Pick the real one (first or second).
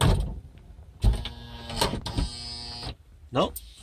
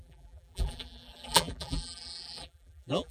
first